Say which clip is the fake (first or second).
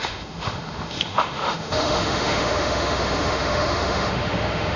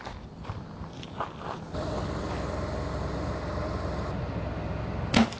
first